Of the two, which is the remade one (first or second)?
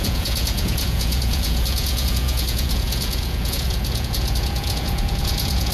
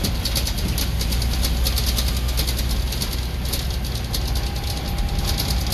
first